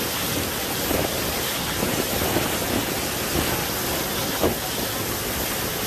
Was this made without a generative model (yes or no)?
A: yes